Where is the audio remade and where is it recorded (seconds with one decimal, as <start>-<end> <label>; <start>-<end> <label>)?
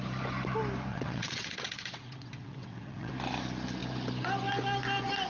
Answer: 0.0-0.9 recorded; 0.9-3.1 remade; 3.1-5.3 recorded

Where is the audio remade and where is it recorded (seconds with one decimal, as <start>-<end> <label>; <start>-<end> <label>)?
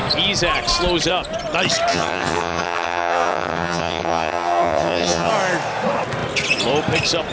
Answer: 0.0-1.9 recorded; 1.9-5.3 remade; 5.3-7.3 recorded